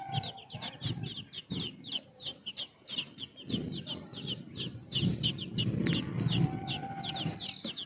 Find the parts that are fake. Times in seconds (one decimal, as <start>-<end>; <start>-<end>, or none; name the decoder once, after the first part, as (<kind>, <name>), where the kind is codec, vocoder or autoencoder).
none